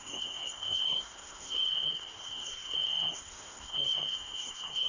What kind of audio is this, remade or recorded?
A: remade